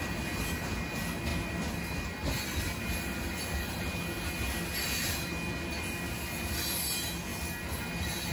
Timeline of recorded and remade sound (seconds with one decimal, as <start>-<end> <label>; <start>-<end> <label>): 0.0-8.3 recorded